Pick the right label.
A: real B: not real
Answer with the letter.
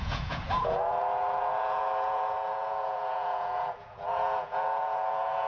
B